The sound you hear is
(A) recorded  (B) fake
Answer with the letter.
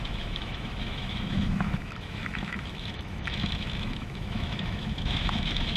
B